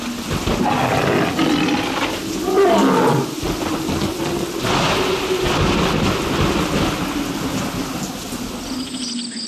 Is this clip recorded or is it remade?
recorded